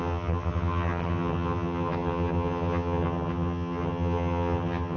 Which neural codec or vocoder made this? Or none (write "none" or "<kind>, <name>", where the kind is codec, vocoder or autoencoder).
vocoder, HiFi-GAN